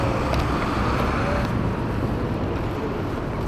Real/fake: real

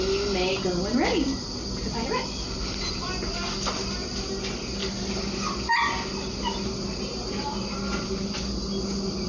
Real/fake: real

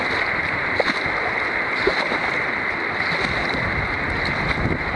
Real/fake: real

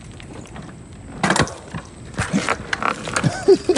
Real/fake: real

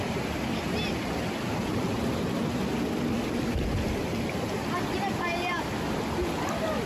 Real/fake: real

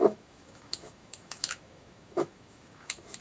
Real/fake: fake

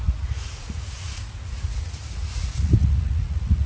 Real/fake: fake